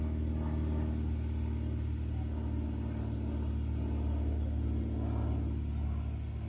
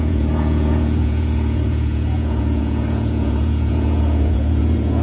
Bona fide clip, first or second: first